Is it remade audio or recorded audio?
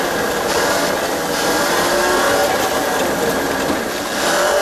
recorded